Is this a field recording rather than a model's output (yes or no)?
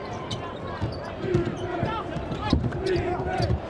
no